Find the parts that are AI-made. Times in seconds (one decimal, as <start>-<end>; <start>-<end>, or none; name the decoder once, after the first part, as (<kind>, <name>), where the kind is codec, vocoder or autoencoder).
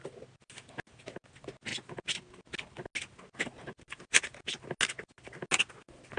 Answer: none